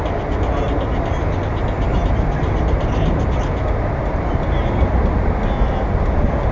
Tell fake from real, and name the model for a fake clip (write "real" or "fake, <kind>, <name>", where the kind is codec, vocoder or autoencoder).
real